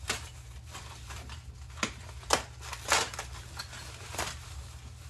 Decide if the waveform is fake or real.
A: real